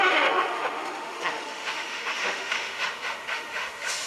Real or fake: fake